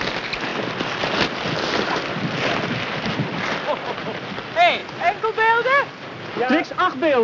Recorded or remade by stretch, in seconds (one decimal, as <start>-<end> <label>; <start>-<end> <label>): 0.0-7.2 recorded